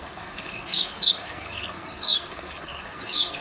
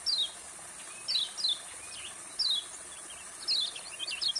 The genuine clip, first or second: second